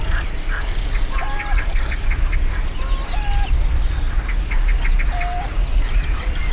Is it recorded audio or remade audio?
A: recorded